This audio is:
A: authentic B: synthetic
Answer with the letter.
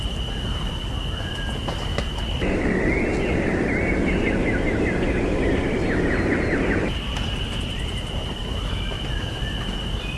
A